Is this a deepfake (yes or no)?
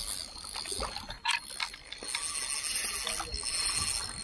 no